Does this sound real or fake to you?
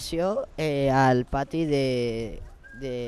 real